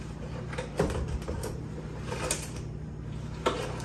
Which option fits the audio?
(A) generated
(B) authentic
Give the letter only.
A